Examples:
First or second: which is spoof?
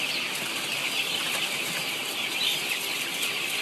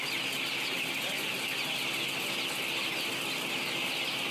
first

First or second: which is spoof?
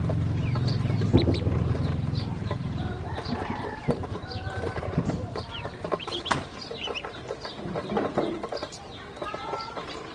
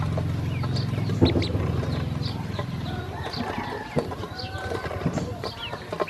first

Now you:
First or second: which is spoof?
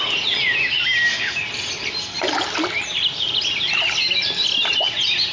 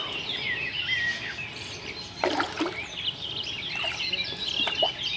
second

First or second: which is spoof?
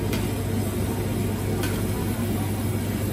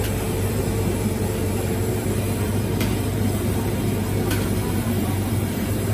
second